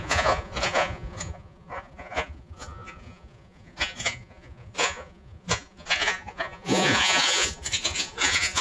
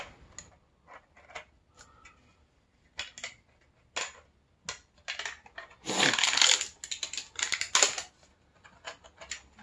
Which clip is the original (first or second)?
second